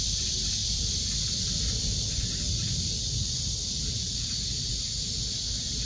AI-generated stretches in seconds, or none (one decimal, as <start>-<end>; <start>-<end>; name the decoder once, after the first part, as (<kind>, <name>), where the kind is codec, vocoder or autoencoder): none

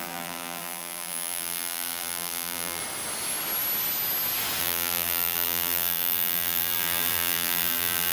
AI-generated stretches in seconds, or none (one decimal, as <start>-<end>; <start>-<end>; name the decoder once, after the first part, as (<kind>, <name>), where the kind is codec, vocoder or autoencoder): 0.0-2.8 (vocoder, BigVGAN v2); 4.6-8.1